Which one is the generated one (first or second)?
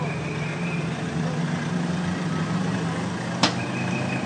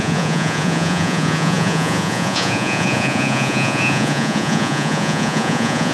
second